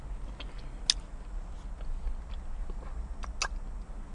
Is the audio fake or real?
real